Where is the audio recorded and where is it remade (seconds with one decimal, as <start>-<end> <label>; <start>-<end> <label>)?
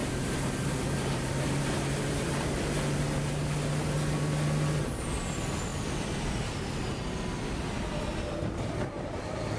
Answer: 0.0-1.6 remade; 1.6-9.6 recorded